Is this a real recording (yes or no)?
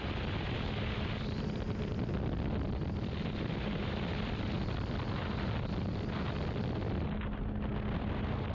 yes